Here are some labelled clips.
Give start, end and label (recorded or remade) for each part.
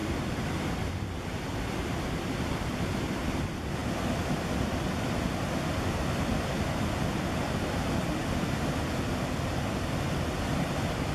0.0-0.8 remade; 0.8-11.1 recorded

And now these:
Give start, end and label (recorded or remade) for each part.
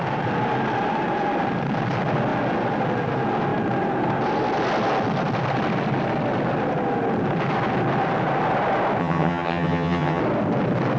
0.0-9.0 recorded; 9.0-10.2 remade; 10.2-11.0 recorded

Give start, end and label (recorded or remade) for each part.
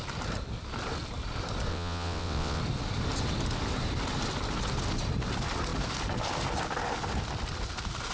0.0-1.7 recorded; 1.7-2.6 remade; 2.6-8.1 recorded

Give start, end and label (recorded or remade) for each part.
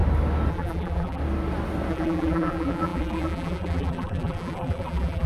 0.0-0.5 recorded; 0.5-1.2 remade; 1.2-1.9 recorded; 1.9-5.3 remade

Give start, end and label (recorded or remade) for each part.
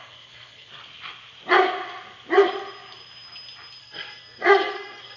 0.0-0.7 remade; 0.7-3.8 recorded; 3.8-5.2 remade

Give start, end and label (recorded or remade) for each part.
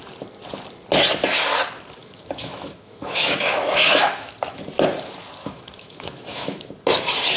0.0-2.0 recorded; 2.0-4.6 remade; 4.6-5.4 recorded; 5.4-6.7 remade; 6.7-7.4 recorded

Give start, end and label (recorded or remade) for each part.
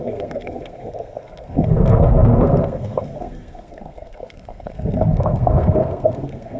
0.0-6.6 remade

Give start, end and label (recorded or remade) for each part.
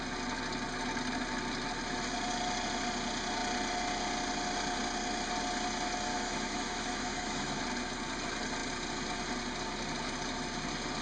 0.0-6.1 recorded; 6.1-7.6 remade; 7.6-11.0 recorded